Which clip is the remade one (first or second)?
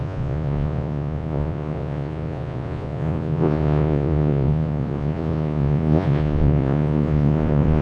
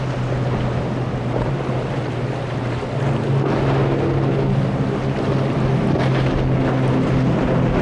first